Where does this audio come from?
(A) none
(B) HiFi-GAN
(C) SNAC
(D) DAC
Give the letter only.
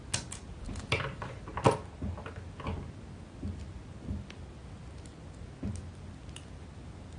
A